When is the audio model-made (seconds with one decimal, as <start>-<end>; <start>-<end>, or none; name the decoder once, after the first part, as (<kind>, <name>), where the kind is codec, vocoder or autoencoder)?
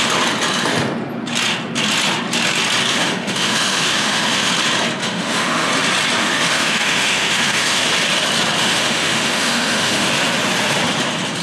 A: 2.9-4.5 (autoencoder, DAC-VAE); 5.0-5.7; 6.2-7.9; 8.6-10.1